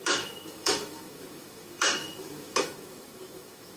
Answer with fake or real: fake